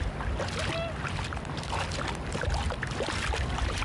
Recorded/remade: recorded